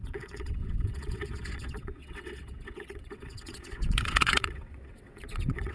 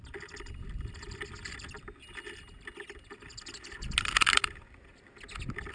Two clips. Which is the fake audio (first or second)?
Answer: first